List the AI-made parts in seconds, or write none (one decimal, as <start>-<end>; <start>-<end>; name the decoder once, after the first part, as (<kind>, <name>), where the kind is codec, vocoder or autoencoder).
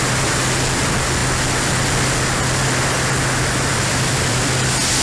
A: 3.7-4.4 (vocoder, BigVGAN v2)